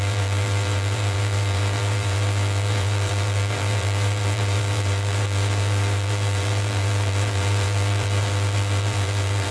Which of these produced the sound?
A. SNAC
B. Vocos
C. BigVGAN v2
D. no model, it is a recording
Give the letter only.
C